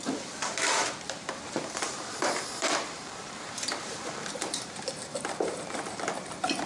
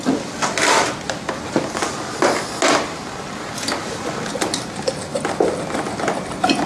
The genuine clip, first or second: second